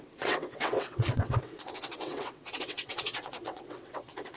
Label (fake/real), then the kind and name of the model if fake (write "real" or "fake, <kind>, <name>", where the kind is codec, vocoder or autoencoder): fake, vocoder, WaveNeXt